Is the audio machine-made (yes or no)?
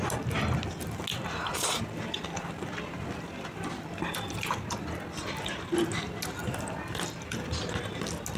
no